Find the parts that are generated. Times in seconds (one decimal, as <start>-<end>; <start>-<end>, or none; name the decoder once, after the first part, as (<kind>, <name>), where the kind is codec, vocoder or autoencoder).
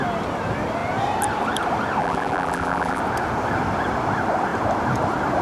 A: 2.0-3.0 (vocoder, BigVGAN v2)